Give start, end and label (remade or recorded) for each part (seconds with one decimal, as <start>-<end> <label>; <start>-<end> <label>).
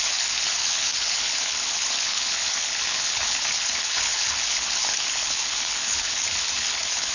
0.0-7.1 remade